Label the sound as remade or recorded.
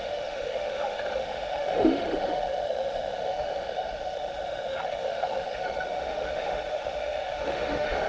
remade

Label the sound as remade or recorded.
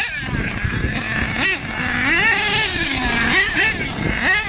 recorded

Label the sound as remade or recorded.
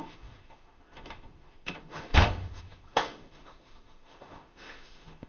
remade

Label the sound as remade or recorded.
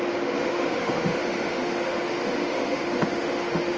remade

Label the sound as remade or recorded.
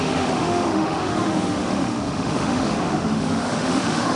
remade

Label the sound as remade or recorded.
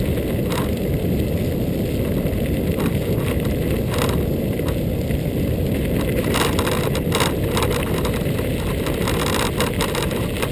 recorded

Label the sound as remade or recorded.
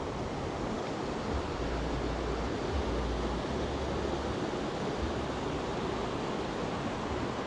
recorded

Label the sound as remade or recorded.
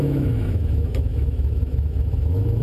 remade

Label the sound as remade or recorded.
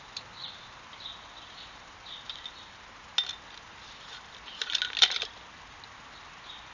recorded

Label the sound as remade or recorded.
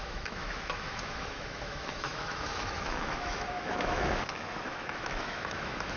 remade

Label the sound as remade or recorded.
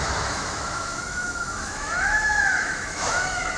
remade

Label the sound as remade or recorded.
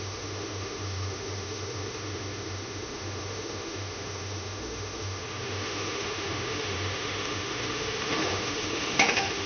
remade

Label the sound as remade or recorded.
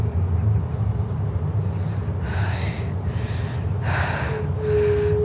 recorded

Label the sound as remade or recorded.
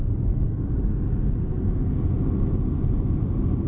recorded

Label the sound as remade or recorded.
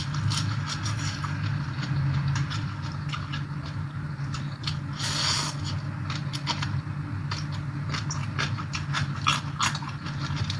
recorded